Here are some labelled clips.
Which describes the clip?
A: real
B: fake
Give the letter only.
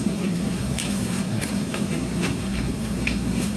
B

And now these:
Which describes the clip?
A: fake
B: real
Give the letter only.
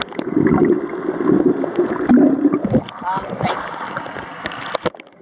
B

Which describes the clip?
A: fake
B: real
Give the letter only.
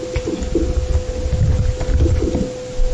B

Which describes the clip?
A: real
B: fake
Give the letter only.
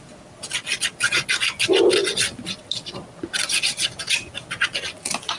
A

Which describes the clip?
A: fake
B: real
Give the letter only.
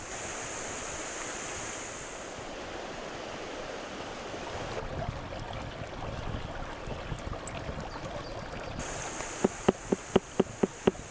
B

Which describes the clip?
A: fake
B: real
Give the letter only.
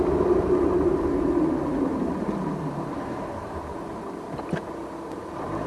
B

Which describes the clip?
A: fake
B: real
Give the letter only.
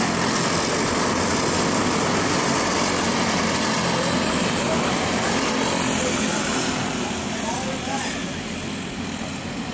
B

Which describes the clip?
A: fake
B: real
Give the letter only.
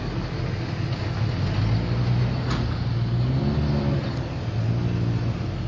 B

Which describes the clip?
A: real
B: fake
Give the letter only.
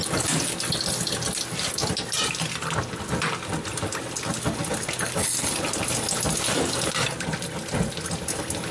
A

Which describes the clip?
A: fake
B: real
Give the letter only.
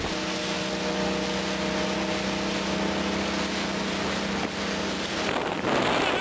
B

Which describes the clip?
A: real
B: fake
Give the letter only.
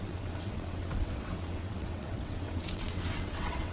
B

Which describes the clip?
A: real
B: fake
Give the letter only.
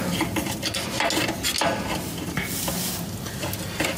A